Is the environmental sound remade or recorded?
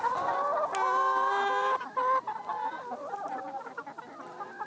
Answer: recorded